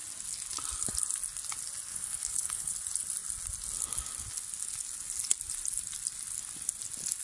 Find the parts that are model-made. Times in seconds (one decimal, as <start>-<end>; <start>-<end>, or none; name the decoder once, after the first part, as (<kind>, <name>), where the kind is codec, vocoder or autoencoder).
1.9-2.7 (codec, HILCodec)